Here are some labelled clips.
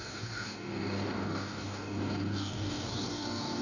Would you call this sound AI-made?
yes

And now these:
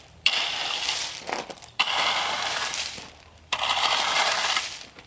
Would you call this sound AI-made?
yes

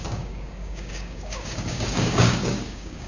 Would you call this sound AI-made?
yes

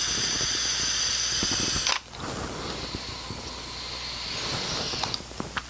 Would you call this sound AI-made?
no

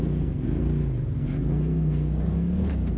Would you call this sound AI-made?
yes